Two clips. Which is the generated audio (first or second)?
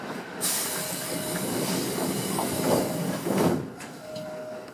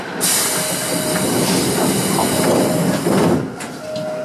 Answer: first